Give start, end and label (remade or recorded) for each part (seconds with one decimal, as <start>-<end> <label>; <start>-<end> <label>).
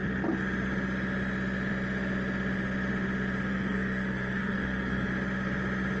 0.0-3.5 recorded; 3.5-5.1 remade; 5.1-6.0 recorded